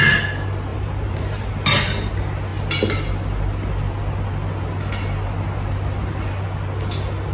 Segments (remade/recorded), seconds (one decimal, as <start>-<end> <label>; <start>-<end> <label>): 0.0-0.7 recorded; 0.7-1.5 remade; 1.5-7.3 recorded